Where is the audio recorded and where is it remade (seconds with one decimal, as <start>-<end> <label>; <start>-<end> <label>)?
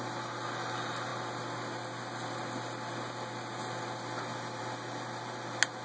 0.0-5.8 recorded